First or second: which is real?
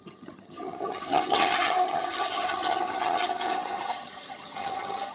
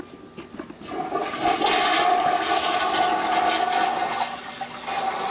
second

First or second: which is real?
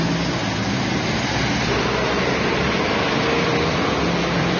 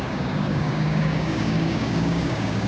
first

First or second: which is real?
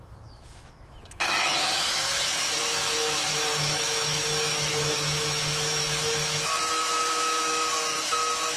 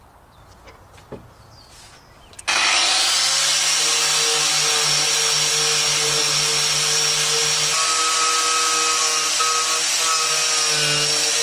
second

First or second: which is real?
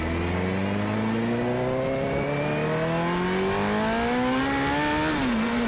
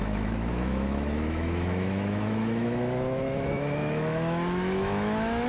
first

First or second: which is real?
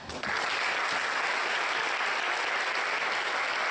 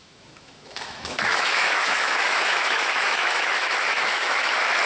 first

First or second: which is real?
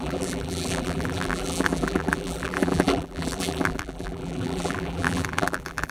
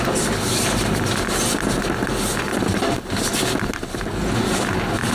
second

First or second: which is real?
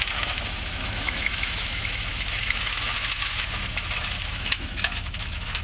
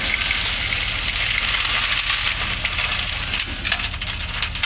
second